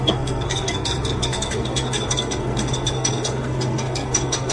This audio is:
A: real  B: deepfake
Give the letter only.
B